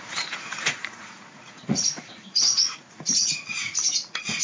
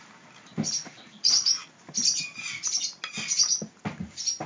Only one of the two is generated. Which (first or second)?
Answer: first